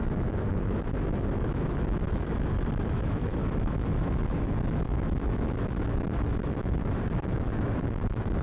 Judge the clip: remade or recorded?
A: remade